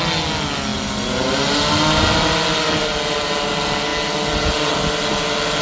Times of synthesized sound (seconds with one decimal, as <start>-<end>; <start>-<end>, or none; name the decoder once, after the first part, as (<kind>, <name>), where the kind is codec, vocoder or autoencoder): none

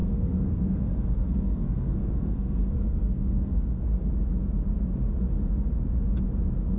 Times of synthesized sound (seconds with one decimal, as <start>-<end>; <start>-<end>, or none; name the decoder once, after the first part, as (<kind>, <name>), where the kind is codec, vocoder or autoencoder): 0.0-4.1 (codec, SNAC)

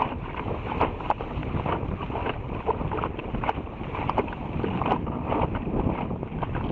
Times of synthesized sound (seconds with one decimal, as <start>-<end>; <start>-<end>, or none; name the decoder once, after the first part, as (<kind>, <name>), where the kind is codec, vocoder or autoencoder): 0.0-1.4 (vocoder, BigVGAN v2); 4.1-6.7

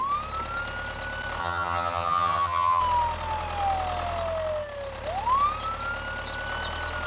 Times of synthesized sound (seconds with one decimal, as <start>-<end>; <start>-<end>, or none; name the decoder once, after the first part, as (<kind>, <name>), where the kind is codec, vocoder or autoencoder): 1.4-2.8 (vocoder, HiFi-GAN)

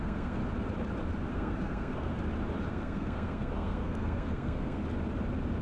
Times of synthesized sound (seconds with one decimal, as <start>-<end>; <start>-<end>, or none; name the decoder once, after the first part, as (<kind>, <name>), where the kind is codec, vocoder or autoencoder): 0.0-0.4 (codec, SNAC); 1.3-2.1; 2.7-4.8

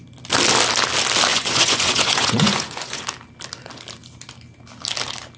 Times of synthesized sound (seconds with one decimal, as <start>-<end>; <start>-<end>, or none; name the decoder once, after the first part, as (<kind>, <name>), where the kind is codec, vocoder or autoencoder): 1.3-3.0 (vocoder, Vocos)

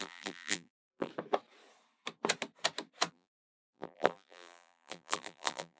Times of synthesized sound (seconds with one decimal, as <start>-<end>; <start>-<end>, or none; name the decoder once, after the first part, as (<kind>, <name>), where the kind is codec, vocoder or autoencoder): 0.0-1.1 (vocoder, BigVGAN v2); 3.1-5.8